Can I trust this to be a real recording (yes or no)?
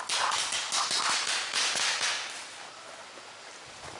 yes